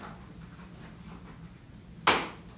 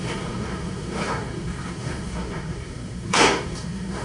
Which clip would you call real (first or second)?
first